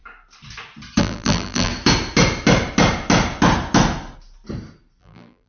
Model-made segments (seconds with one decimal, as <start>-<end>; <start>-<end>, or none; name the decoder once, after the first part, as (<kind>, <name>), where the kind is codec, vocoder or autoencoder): 1.0-1.7 (vocoder, BigVGAN v2); 5.0-5.5